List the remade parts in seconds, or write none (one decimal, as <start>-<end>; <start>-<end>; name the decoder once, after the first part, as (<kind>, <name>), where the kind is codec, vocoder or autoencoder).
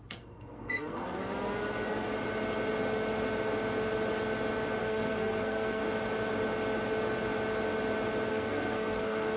0.0-1.2 (codec, SNAC); 4.8-5.8; 8.3-9.4